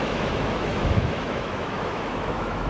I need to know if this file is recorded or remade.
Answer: remade